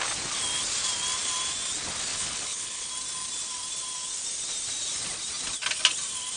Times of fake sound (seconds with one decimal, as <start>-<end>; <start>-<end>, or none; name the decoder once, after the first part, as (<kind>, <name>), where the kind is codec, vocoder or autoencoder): 2.1-2.9 (codec, HILCodec)